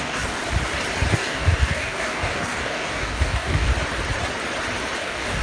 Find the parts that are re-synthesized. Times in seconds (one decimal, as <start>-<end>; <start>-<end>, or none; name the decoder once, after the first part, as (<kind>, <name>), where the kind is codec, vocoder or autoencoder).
0.0-0.4 (codec, DAC); 1.1-3.7; 5.0-5.4